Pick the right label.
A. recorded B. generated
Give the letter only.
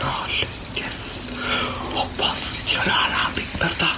A